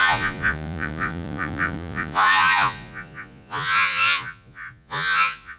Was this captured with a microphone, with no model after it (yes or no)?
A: no